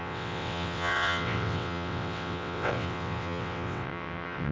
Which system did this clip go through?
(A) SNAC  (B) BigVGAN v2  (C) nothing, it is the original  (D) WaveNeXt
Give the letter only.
D